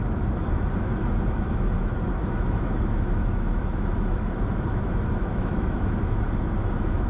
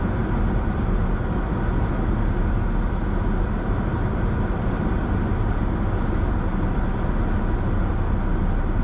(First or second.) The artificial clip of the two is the first